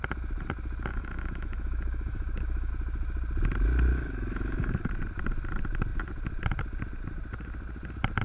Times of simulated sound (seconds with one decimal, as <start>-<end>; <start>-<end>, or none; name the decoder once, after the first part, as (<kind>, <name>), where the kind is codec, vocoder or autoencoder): 0.9-2.7 (autoencoder, DAC-VAE); 3.9-4.9

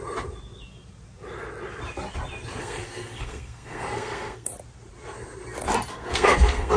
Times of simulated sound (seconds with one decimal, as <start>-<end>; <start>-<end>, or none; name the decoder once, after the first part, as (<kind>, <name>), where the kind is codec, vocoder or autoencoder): 2.6-4.5 (codec, SNAC); 5.9-6.8

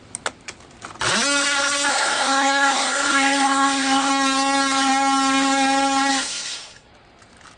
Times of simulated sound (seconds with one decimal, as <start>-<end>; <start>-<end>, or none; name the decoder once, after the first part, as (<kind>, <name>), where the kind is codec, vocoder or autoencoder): 1.9-4.1 (codec, SNAC); 6.1-6.9

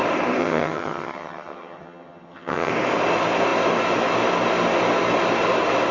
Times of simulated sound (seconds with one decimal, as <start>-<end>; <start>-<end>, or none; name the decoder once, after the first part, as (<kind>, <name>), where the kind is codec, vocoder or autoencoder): 0.4-2.7 (vocoder, HiFi-GAN)

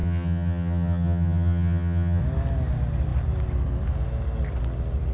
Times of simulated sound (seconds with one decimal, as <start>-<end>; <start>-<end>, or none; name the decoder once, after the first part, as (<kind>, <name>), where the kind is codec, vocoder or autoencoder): 0.0-2.2 (vocoder, HiFi-GAN)